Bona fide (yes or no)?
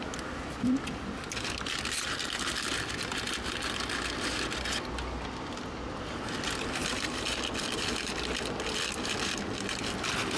yes